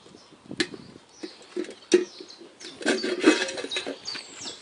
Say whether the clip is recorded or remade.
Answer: recorded